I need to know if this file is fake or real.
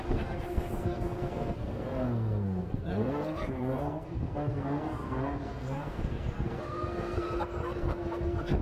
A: fake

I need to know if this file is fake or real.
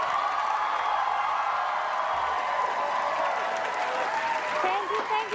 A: real